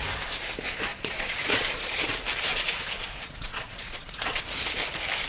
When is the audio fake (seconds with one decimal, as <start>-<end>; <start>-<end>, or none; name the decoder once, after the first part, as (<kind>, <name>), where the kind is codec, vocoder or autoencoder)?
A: 0.9-2.1 (vocoder, Vocos); 2.5-4.4